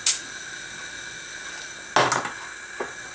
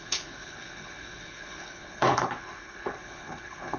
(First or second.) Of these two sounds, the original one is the first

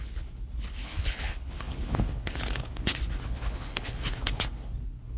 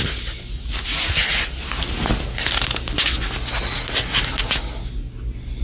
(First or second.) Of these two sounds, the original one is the second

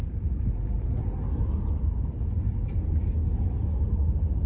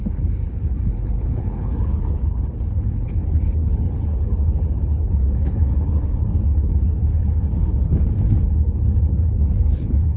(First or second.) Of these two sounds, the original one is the first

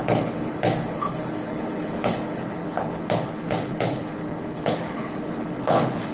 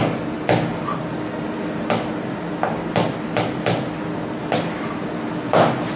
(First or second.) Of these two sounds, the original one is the second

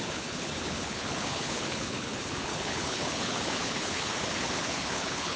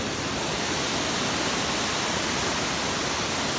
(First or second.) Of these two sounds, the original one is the second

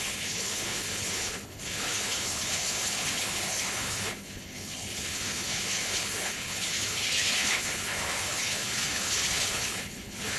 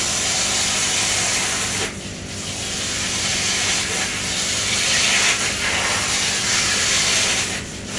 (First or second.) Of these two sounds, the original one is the second